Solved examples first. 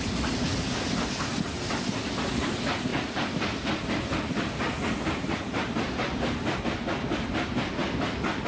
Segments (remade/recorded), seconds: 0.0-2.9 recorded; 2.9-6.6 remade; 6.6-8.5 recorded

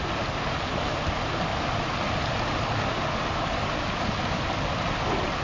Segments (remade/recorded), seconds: 0.0-5.4 recorded